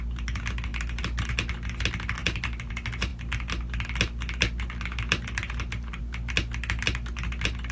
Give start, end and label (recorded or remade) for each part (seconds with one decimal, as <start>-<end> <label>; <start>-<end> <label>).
0.0-7.7 recorded